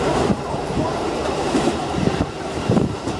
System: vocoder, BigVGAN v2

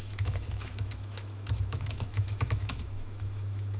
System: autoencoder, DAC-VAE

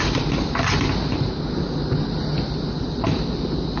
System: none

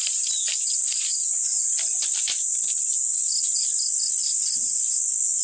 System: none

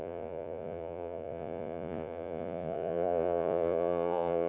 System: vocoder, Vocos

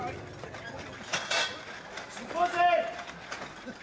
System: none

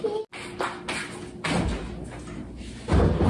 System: none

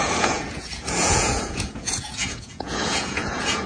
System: vocoder, Vocos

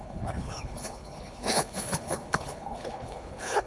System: codec, HILCodec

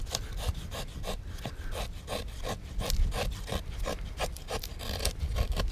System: none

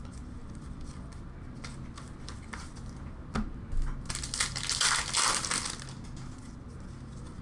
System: none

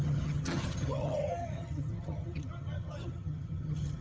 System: vocoder, HiFi-GAN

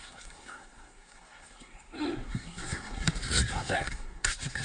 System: codec, SNAC